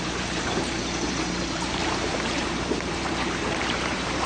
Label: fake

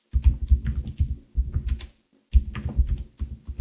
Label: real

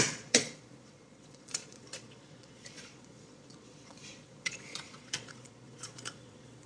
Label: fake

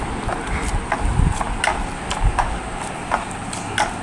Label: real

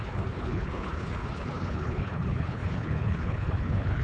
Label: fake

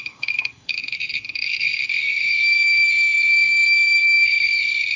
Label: fake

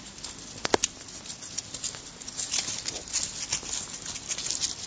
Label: real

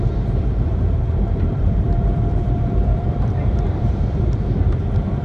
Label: fake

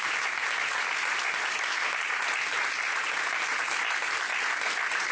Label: real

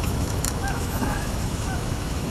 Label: fake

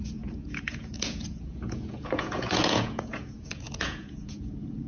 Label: fake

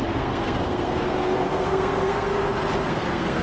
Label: fake